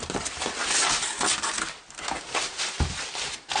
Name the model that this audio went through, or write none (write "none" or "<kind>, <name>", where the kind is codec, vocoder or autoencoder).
none